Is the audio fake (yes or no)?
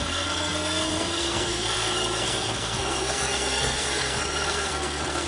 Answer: yes